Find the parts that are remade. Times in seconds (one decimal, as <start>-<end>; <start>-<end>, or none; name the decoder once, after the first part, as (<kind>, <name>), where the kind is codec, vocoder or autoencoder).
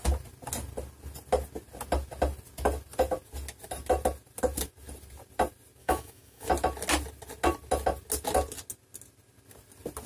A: 5.8-6.5 (autoencoder, DAC-VAE)